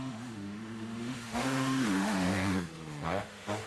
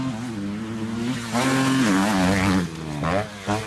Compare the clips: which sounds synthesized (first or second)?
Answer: first